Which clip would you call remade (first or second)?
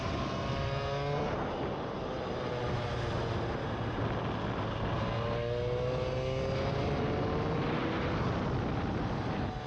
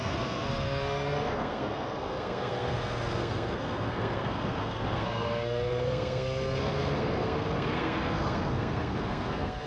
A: second